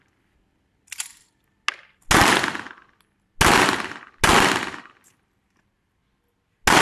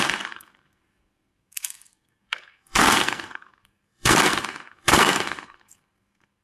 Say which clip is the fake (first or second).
second